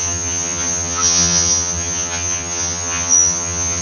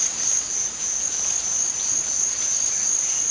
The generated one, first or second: first